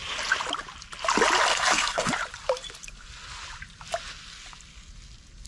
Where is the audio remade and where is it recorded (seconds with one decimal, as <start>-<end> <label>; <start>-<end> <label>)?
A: 0.0-1.5 recorded; 1.5-2.1 remade; 2.1-5.5 recorded